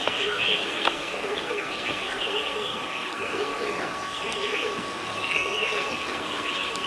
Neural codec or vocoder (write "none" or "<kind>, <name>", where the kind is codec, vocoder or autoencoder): codec, SNAC